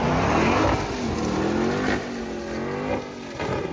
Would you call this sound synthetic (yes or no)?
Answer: no